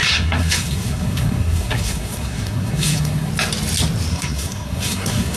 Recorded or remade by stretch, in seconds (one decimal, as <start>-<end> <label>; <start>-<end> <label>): 0.0-3.3 remade; 3.3-4.1 recorded; 4.1-5.4 remade